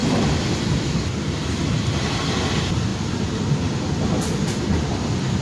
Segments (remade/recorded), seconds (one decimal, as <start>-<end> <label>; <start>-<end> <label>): 0.0-5.4 recorded